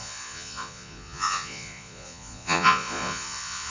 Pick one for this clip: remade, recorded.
remade